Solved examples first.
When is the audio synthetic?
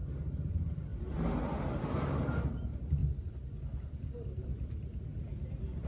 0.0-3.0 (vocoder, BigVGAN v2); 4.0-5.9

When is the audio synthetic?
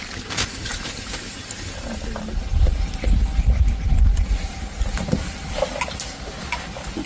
none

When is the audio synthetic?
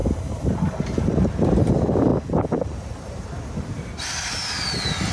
none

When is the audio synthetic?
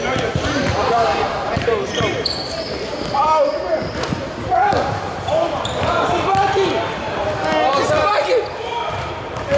0.0-7.2 (vocoder, BigVGAN v2); 8.9-9.6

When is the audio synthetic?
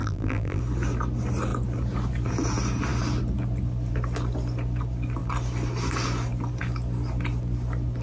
0.0-0.6 (vocoder, BigVGAN v2)